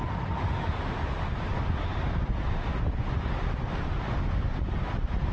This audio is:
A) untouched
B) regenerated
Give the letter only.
A